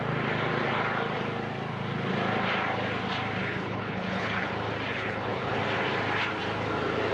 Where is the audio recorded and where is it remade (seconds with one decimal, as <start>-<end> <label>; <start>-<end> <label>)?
0.0-3.4 recorded; 3.4-4.5 remade; 4.5-4.9 recorded; 4.9-5.6 remade; 5.6-7.1 recorded